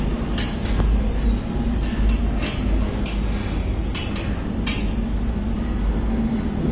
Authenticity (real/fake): real